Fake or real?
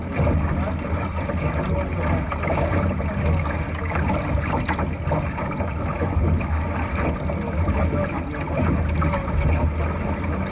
real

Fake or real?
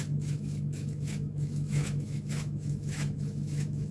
fake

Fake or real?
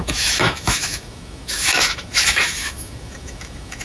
fake